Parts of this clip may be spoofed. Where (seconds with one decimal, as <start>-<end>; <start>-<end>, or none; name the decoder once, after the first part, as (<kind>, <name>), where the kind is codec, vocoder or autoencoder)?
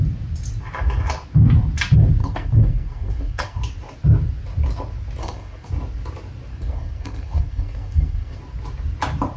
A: 2.2-3.6 (codec, SNAC); 5.2-5.7; 6.5-8.4